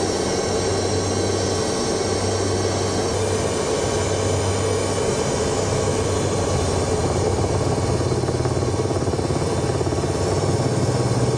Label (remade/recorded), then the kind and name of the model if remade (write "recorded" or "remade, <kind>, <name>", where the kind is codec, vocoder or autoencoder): recorded